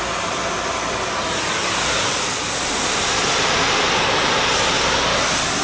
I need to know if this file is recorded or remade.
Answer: recorded